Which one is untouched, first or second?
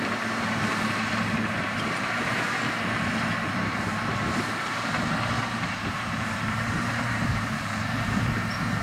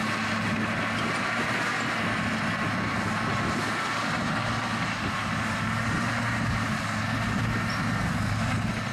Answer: second